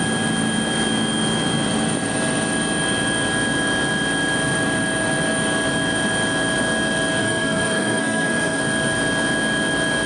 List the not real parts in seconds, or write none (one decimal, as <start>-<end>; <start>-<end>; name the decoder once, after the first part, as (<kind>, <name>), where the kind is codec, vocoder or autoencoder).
7.2-8.6 (codec, SNAC)